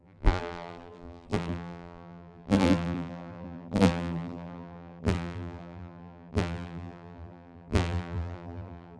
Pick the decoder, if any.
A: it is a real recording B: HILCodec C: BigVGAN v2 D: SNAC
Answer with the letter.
C